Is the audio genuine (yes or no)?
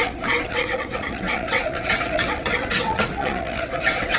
no